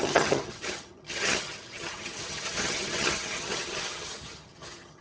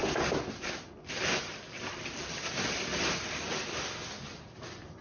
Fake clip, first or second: first